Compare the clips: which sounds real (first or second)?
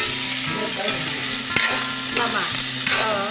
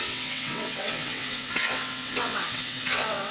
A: first